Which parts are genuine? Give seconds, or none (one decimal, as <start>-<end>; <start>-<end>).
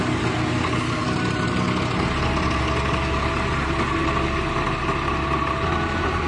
0.0-6.3